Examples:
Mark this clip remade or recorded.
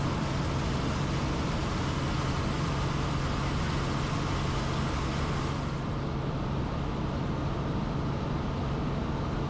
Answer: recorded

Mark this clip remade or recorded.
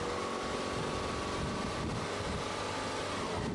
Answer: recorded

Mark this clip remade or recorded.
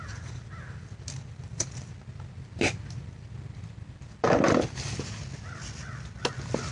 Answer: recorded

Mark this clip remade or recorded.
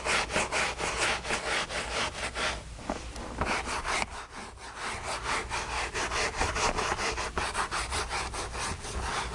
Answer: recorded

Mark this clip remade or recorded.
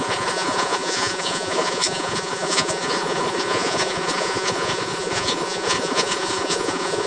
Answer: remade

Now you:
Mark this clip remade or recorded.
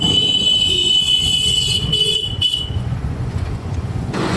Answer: remade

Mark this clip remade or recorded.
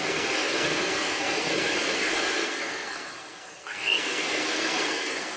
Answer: remade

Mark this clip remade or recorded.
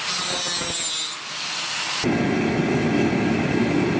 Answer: recorded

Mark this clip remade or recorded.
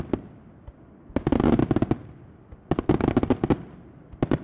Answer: recorded